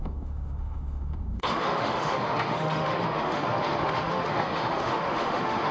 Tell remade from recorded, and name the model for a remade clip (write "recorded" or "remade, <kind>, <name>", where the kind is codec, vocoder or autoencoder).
remade, autoencoder, DAC-VAE